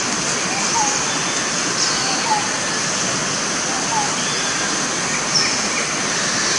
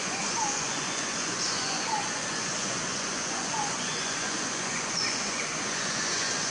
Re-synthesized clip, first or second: second